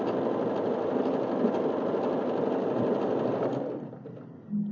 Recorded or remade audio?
recorded